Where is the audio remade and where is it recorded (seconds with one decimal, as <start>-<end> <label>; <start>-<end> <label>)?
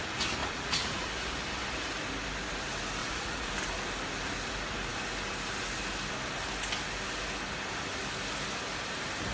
0.0-0.4 recorded; 0.4-1.1 remade; 1.1-3.0 recorded; 3.0-3.5 remade; 3.5-9.3 recorded